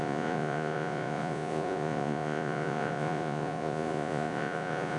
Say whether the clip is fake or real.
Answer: fake